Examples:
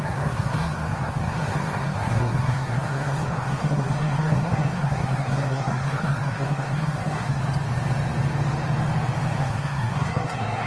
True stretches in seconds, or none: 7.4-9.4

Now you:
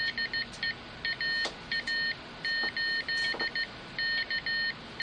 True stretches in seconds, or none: 0.0-5.0